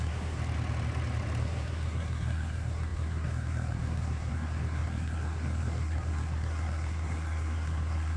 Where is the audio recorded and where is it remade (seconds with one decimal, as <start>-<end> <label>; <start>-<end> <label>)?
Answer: 0.0-0.4 remade; 0.4-1.4 recorded; 1.4-8.2 remade